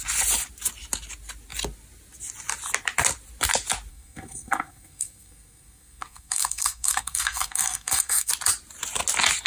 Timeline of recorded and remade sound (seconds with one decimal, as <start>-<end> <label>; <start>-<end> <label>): 0.0-3.9 recorded; 3.9-8.3 remade; 8.3-9.5 recorded